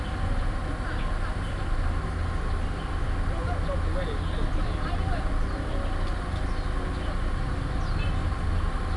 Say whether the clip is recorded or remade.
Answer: recorded